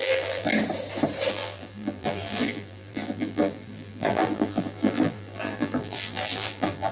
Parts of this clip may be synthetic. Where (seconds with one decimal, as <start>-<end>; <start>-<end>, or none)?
0.0-0.5; 1.3-6.9